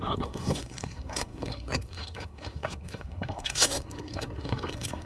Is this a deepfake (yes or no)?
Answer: yes